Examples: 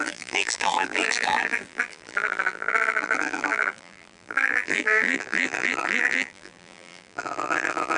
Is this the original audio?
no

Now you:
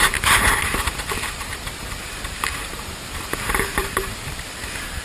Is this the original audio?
no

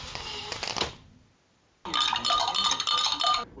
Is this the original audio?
yes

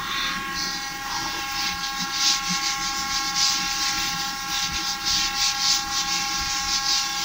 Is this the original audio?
yes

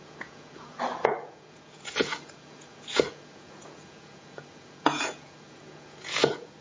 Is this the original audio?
no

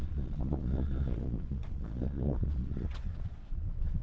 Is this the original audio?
no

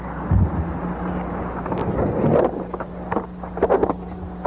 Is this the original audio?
yes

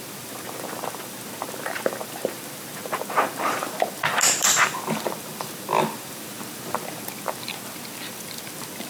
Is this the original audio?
no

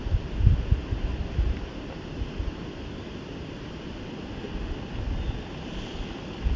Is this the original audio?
yes